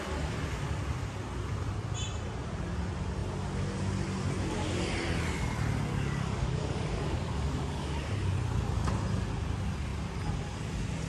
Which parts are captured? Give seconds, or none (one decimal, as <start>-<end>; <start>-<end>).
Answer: 0.0-5.9; 8.1-11.1